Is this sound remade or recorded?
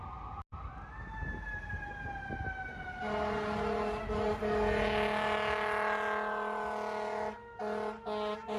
recorded